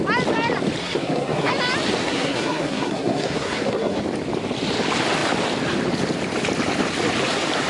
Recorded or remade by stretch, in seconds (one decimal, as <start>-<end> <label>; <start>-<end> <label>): 0.0-0.8 recorded; 0.8-1.5 remade; 1.5-2.0 recorded; 2.0-4.0 remade; 4.0-7.7 recorded